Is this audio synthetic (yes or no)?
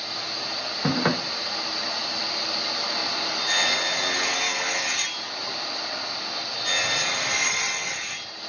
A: no